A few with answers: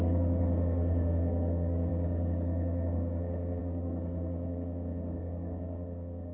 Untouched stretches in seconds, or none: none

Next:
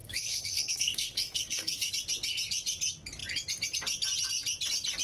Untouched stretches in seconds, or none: 1.9-5.0